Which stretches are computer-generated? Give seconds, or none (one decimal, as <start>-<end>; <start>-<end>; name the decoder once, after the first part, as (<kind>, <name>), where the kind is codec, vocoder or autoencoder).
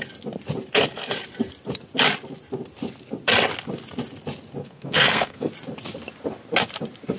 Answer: 4.6-5.5 (codec, SNAC)